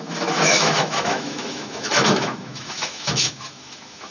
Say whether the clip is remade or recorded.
remade